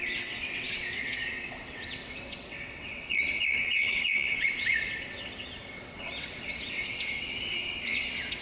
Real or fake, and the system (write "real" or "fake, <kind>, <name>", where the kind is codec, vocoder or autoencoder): fake, vocoder, WaveNeXt